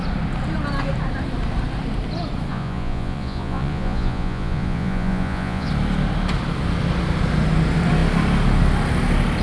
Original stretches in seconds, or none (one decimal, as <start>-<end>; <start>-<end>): 0.0-2.5; 5.7-9.4

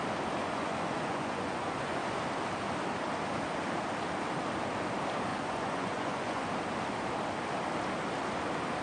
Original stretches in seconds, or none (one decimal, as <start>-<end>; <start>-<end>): 0.0-0.4; 2.0-5.3; 6.5-8.8

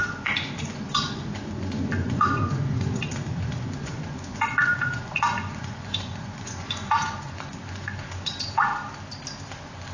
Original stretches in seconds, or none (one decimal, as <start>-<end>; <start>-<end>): 8.7-9.5

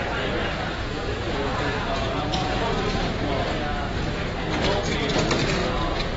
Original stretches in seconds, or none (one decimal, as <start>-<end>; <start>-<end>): 0.0-0.4; 2.7-5.6

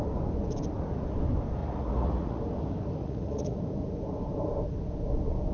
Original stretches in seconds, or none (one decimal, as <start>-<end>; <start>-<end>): 0.0-1.6; 2.4-3.0; 3.6-5.5

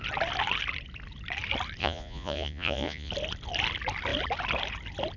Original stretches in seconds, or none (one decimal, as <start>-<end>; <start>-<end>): 0.0-1.8; 3.1-5.2

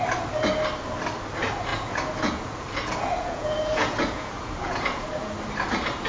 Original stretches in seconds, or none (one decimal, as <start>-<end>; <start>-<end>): 0.0-1.7; 5.4-6.1

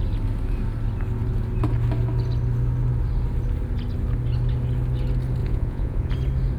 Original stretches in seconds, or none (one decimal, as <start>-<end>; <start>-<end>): 0.0-5.4; 6.1-6.6